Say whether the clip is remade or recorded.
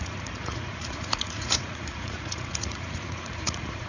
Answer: remade